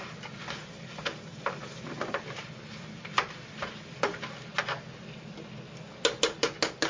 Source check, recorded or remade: recorded